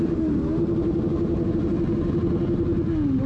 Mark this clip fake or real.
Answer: real